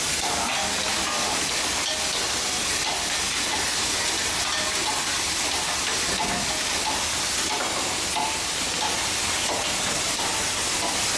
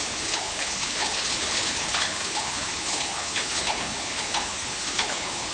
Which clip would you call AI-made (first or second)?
second